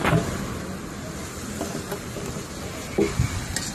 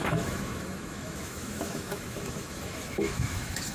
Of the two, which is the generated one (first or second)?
second